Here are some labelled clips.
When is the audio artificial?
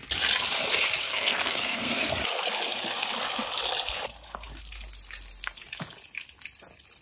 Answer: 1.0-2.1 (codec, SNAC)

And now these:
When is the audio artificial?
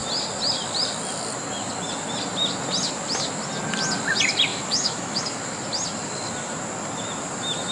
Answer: 4.5-5.2 (autoencoder, DAC-VAE)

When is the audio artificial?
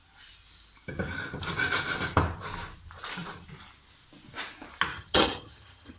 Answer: 4.9-6.0 (vocoder, HiFi-GAN)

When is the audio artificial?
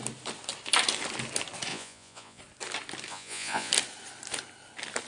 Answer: 1.7-2.4 (vocoder, Vocos); 3.1-3.7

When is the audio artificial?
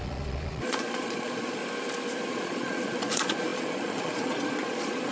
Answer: 0.0-1.6 (vocoder, Vocos); 2.3-5.1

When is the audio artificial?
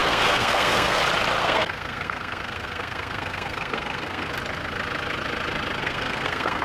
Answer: 0.0-1.0 (codec, SNAC); 1.4-4.3; 5.8-6.6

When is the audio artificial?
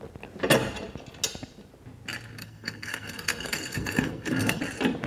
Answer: 2.4-4.6 (codec, SNAC)